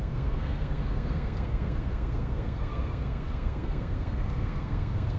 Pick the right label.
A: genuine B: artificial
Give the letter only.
B